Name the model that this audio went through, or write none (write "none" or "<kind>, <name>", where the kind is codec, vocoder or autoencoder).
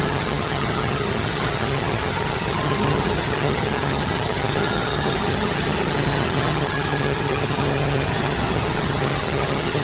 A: vocoder, HiFi-GAN